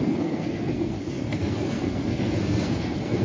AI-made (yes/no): yes